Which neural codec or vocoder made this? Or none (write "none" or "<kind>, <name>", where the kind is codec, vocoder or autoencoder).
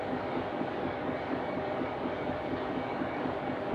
codec, DAC